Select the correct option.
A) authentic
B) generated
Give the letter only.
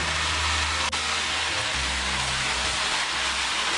A